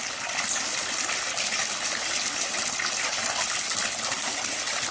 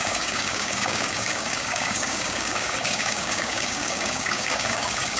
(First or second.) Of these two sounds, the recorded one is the first